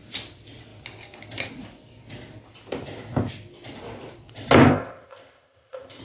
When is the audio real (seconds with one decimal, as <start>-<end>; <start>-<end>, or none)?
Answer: 0.0-4.7